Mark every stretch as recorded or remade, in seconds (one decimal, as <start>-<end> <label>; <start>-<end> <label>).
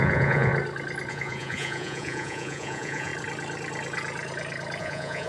0.0-0.5 remade; 0.5-1.1 recorded; 1.1-3.1 remade; 3.1-4.8 recorded; 4.8-5.3 remade